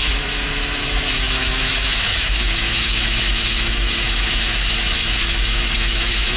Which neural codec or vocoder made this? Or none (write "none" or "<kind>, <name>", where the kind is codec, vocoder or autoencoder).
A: autoencoder, DAC-VAE